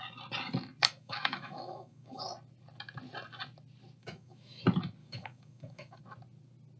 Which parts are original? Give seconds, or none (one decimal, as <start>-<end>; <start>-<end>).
0.0-0.8; 2.2-4.0; 4.6-5.0; 6.0-6.8